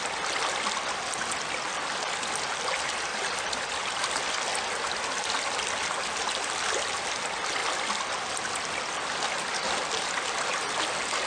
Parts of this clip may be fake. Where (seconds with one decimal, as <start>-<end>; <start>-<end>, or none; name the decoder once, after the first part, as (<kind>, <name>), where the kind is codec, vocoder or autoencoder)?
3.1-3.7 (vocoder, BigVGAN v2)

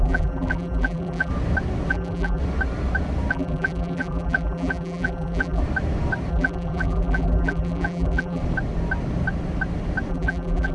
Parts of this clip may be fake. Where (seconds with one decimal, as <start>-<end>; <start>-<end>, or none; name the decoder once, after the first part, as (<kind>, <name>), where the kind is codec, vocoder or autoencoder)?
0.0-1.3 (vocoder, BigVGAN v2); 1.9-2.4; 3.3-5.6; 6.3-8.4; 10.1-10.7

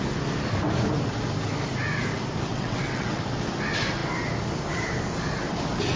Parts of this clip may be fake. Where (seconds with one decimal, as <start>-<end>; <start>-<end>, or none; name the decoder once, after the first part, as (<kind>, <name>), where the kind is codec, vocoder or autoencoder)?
2.5-3.2 (vocoder, WaveNeXt)